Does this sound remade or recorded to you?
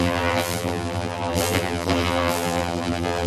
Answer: remade